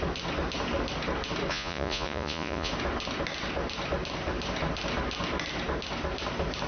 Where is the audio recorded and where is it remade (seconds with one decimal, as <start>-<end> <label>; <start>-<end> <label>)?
0.0-1.5 recorded; 1.5-2.7 remade; 2.7-6.7 recorded